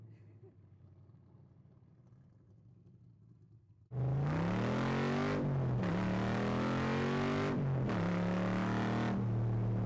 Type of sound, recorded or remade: recorded